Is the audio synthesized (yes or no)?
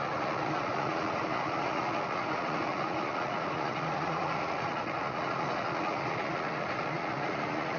yes